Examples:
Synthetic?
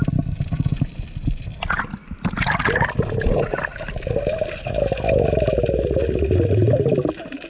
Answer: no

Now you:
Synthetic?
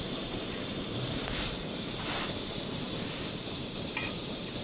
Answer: yes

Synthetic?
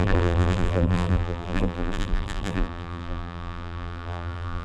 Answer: yes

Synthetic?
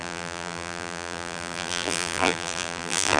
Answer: yes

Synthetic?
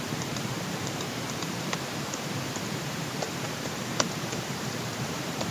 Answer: yes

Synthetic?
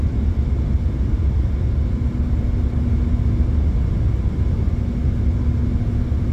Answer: no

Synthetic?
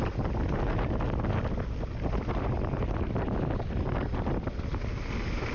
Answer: no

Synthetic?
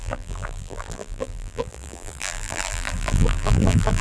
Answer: yes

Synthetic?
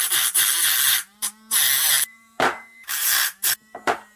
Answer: yes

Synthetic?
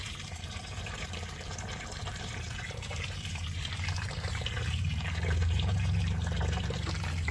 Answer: yes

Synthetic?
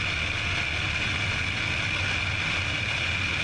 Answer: no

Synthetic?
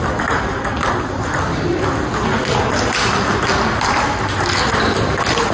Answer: no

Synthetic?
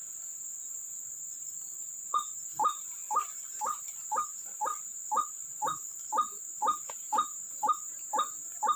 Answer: yes